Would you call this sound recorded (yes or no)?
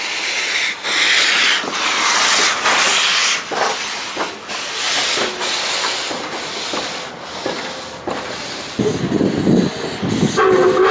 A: yes